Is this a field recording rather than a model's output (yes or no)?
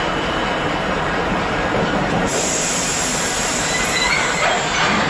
no